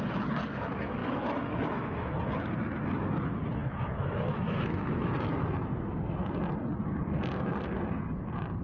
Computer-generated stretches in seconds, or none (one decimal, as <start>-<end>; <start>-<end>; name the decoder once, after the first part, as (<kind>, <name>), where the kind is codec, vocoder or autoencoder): 1.0-2.1 (autoencoder, DAC-VAE); 3.6-5.1